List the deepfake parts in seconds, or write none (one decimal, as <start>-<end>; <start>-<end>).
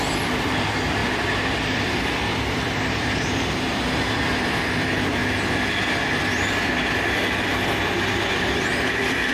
0.0-5.2; 8.4-9.3